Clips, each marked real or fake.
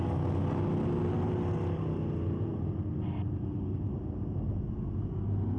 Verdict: real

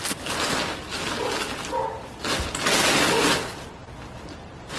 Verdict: real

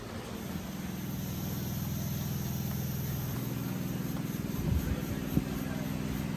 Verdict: real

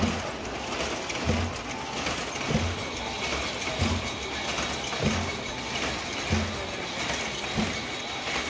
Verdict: real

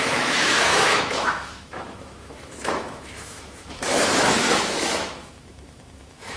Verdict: fake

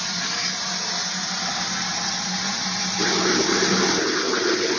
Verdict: real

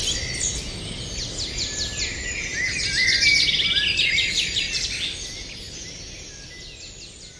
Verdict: real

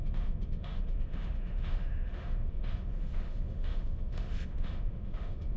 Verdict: fake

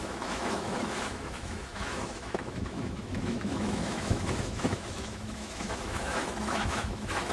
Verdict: fake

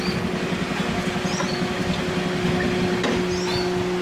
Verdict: real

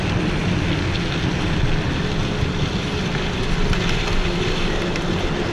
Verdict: real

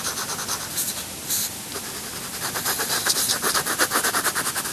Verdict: real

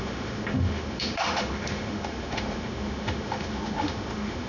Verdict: fake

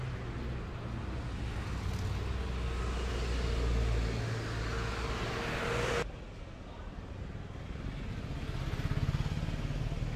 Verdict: real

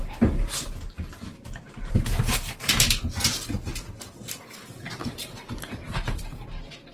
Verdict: real